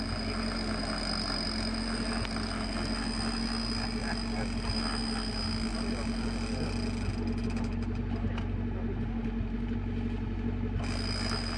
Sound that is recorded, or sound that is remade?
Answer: recorded